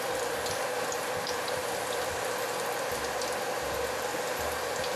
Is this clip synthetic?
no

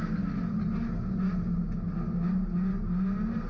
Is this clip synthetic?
no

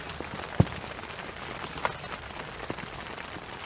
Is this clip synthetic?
no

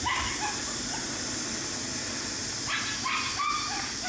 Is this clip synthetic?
no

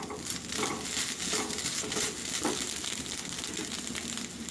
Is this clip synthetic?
no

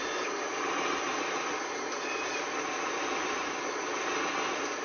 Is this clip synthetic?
no